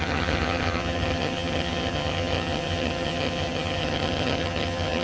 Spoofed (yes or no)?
yes